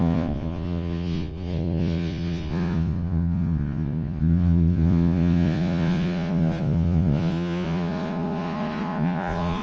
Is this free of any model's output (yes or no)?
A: no